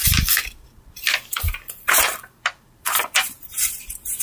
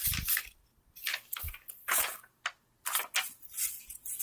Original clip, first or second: second